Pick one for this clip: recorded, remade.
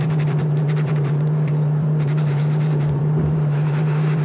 remade